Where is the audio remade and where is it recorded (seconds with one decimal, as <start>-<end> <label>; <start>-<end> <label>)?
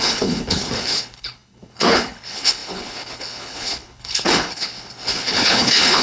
0.0-6.0 remade